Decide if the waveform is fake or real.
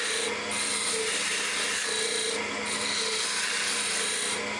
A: real